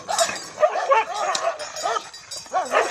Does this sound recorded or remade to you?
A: recorded